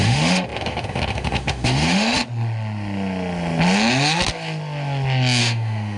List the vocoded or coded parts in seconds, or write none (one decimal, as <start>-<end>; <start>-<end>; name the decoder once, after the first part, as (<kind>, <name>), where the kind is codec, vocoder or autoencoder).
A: 0.0-2.2 (autoencoder, DAC-VAE); 5.4-6.0

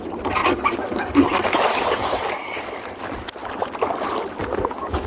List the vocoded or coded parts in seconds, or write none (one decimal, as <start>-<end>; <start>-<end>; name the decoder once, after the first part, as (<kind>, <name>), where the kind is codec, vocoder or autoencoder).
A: 0.4-2.8 (codec, DAC); 4.4-5.1